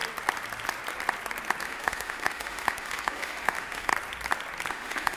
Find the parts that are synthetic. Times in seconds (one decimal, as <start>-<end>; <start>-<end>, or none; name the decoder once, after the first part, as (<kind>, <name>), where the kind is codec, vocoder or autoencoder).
1.6-3.9 (autoencoder, DAC-VAE); 4.7-5.2